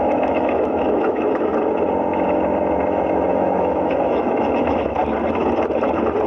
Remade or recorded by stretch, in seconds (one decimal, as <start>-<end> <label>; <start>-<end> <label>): 0.0-1.5 remade; 1.5-3.3 recorded; 3.3-5.0 remade; 5.0-6.3 recorded